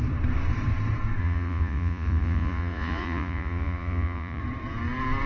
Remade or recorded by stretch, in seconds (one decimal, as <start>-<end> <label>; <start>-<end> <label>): 0.0-1.2 recorded; 1.2-4.4 remade; 4.4-5.3 recorded